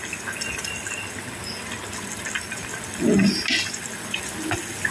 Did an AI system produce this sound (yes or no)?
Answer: no